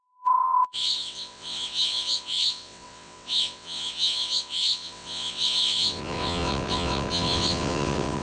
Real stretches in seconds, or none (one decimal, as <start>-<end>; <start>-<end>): none